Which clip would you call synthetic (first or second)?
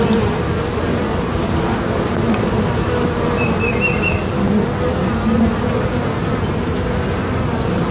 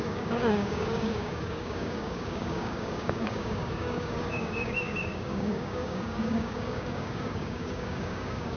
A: second